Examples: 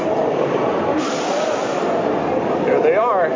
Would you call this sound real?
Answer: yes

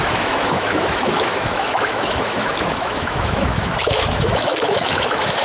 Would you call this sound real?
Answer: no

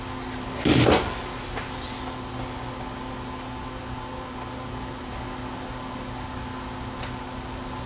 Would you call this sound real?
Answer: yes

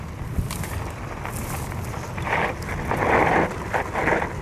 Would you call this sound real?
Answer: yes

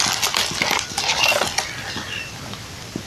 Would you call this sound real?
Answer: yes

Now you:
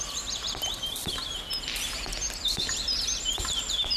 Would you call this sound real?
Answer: yes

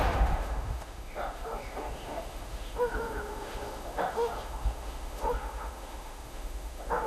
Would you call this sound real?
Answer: no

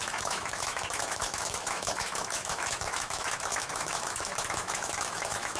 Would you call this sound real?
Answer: no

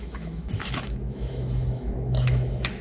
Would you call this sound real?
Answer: no